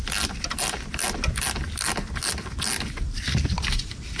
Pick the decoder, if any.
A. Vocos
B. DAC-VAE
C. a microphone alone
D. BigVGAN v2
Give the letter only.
C